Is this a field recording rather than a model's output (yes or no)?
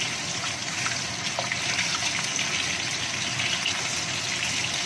yes